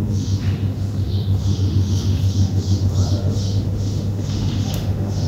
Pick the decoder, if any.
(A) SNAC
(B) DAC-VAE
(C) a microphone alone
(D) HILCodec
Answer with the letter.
B